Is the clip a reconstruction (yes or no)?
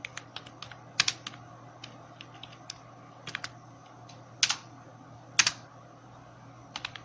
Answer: no